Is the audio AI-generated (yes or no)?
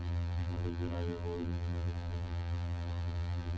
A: yes